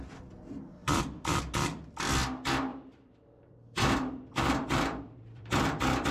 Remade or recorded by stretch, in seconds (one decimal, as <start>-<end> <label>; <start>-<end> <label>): 0.0-0.8 recorded; 0.8-1.4 remade; 1.4-2.7 recorded; 2.7-6.1 remade